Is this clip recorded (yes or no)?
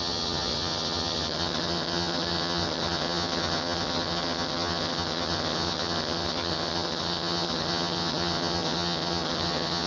no